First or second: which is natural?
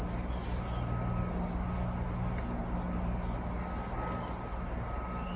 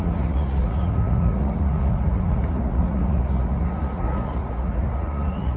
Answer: first